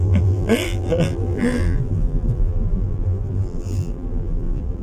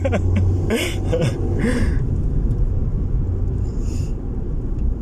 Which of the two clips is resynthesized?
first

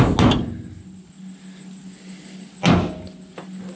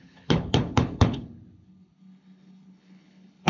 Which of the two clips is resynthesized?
second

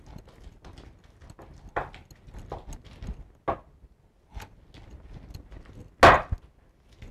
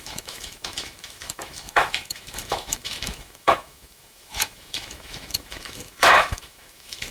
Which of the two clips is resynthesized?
second